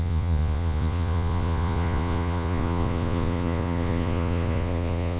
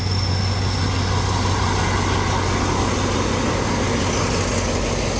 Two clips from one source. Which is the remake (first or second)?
first